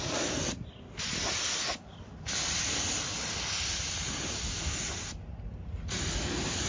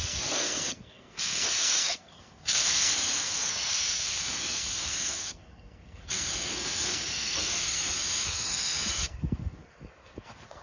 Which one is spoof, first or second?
second